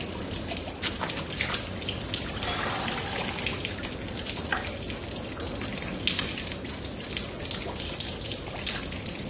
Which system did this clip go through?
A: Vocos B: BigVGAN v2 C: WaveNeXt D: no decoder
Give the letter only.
D